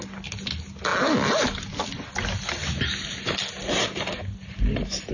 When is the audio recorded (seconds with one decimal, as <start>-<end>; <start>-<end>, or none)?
0.0-5.1